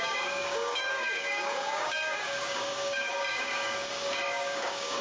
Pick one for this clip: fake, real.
fake